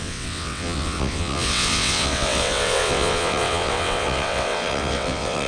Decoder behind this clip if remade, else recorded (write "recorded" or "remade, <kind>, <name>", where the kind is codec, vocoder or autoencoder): remade, vocoder, WaveNeXt